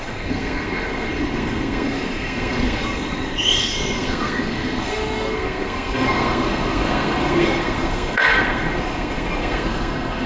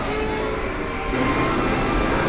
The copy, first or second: first